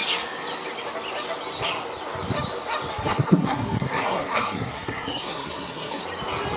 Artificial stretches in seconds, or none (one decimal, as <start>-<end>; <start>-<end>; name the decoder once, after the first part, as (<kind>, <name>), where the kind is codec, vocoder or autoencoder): 2.9-6.0 (codec, SNAC)